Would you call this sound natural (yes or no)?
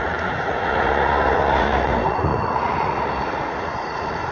no